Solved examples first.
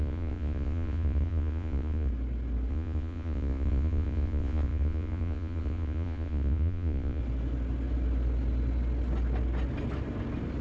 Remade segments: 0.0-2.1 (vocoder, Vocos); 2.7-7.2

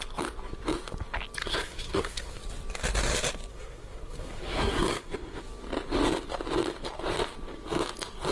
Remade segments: 1.4-2.4 (codec, SNAC); 3.5-5.4

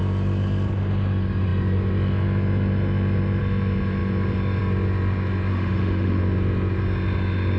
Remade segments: 5.5-6.2 (autoencoder, DAC-VAE)

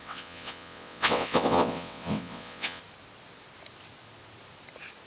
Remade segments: 0.0-2.8 (vocoder, WaveNeXt)

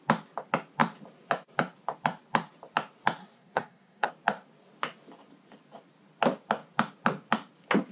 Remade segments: 3.2-4.1 (codec, SNAC)

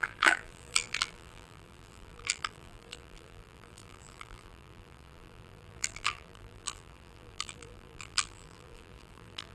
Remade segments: 0.0-9.5 (vocoder, BigVGAN v2)